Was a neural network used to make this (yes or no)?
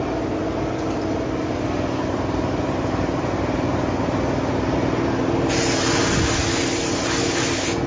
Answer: no